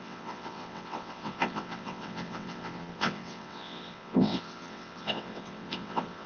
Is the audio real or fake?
fake